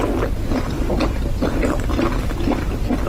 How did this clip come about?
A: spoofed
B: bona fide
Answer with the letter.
B